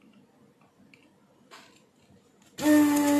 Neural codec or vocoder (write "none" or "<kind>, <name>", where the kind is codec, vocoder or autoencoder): none